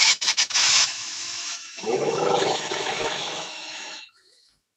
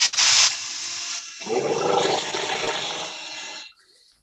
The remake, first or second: first